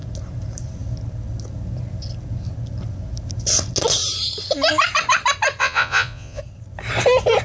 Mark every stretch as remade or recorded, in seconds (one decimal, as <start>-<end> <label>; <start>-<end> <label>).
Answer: 0.0-5.6 recorded; 5.6-6.4 remade; 6.4-7.4 recorded